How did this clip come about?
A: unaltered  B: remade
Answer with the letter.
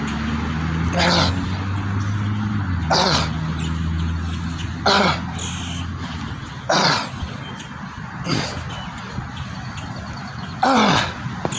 A